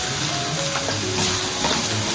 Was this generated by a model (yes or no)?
no